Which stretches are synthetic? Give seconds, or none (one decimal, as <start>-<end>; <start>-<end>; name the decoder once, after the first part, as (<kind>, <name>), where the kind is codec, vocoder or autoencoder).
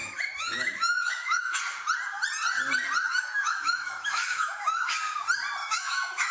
0.0-1.6 (autoencoder, DAC-VAE); 3.1-4.9; 5.6-6.3